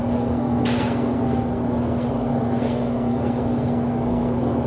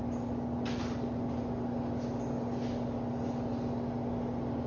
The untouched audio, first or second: second